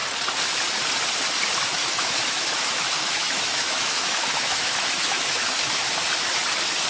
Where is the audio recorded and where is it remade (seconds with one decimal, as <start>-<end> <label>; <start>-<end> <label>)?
0.0-1.8 recorded; 1.8-5.9 remade; 5.9-6.9 recorded